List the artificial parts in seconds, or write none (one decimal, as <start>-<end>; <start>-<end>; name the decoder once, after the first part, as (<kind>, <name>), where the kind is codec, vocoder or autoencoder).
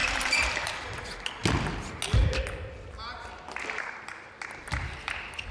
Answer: 0.0-0.7 (vocoder, BigVGAN v2)